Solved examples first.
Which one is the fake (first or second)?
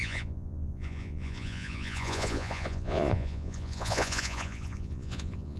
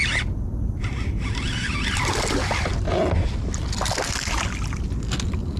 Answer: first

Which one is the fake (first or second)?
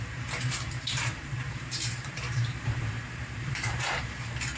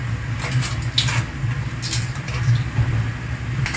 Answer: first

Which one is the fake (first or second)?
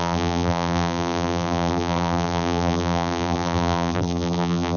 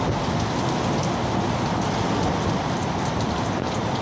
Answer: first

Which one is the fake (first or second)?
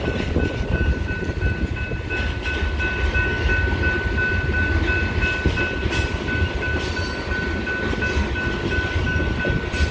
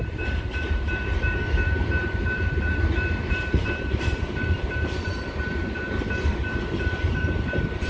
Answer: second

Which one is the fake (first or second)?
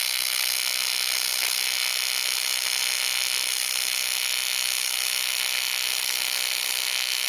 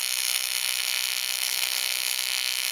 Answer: second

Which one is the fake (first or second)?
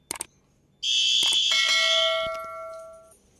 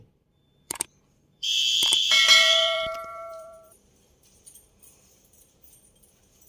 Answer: second